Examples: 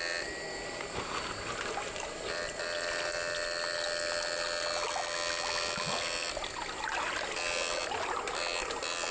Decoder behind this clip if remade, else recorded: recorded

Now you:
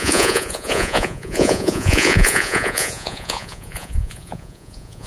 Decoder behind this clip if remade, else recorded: remade, vocoder, Vocos